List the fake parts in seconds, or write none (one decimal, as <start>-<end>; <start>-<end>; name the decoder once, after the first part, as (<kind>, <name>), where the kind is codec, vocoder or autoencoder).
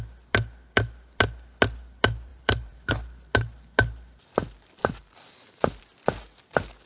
2.3-2.9 (vocoder, BigVGAN v2); 4.8-5.8